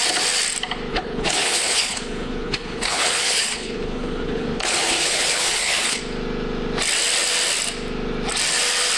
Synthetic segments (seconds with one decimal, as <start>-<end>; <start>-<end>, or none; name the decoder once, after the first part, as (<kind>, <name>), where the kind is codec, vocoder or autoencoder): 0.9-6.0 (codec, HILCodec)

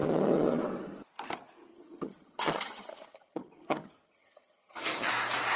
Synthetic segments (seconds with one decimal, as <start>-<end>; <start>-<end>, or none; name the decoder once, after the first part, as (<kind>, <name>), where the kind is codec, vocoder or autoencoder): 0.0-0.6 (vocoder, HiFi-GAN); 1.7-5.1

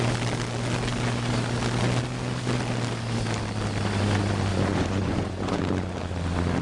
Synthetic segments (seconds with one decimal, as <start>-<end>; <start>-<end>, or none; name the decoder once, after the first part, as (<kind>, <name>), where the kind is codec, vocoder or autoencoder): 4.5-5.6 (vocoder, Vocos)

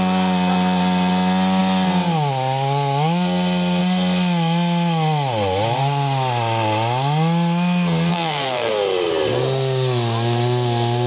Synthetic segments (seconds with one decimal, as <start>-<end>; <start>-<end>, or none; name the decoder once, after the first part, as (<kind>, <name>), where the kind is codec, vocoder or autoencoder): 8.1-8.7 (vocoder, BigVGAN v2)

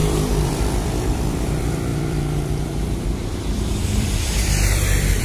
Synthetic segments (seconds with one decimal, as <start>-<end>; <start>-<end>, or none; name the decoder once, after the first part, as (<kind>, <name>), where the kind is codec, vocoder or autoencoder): 0.0-5.2 (vocoder, BigVGAN v2)

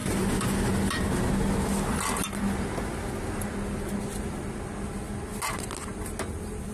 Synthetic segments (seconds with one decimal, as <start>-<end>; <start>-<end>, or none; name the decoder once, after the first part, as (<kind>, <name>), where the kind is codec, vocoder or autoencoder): none

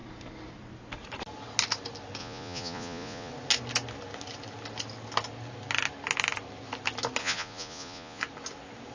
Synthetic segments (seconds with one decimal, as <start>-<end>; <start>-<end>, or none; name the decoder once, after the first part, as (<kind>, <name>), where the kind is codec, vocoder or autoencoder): 2.2-3.3 (vocoder, Vocos); 7.2-8.2

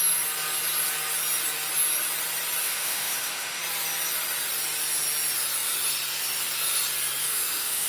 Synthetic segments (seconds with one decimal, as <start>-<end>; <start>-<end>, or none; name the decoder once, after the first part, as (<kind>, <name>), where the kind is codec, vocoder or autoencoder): 2.6-3.6 (autoencoder, DAC-VAE); 7.2-7.9